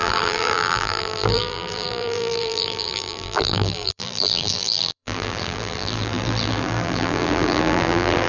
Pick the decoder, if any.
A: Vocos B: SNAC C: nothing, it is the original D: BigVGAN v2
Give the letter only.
D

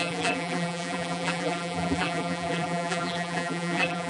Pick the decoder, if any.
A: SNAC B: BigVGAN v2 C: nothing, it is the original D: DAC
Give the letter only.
B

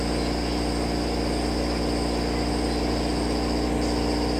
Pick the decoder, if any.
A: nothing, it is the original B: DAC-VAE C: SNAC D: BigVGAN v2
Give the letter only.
A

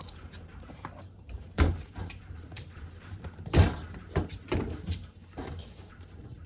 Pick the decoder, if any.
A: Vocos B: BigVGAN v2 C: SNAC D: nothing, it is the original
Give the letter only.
B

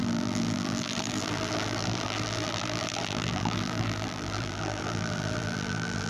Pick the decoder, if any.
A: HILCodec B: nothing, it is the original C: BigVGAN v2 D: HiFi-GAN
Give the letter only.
C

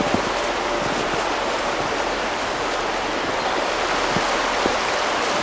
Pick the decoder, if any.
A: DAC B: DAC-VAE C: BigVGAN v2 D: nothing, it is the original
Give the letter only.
D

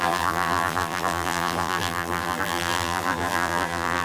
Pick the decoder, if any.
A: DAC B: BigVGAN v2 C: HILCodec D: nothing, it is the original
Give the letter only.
B